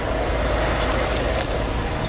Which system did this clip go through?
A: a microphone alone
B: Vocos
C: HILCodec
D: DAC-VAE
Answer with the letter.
A